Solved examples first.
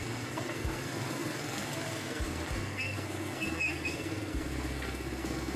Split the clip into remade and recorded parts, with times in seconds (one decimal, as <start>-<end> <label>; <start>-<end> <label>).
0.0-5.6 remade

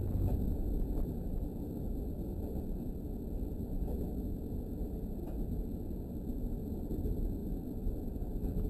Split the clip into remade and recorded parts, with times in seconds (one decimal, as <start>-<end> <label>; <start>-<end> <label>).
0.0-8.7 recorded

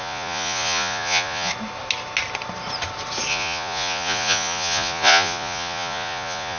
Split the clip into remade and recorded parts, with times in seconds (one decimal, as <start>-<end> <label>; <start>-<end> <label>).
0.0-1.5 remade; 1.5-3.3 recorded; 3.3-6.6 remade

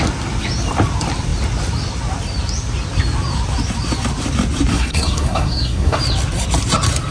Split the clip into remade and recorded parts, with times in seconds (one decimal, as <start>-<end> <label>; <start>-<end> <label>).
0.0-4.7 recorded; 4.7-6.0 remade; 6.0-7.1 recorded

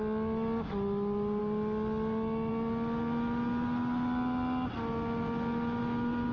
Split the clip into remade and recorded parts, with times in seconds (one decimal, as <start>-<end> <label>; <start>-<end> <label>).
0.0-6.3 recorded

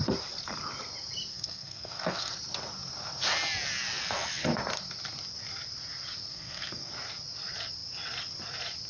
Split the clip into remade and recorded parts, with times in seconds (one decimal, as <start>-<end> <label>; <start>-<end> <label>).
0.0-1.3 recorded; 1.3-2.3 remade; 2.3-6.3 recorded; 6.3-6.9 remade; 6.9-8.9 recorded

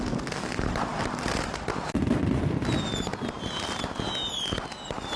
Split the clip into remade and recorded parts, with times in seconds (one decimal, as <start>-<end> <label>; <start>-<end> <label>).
0.0-5.2 recorded